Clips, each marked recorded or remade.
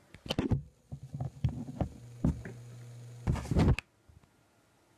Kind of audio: recorded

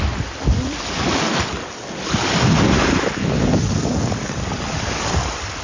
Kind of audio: recorded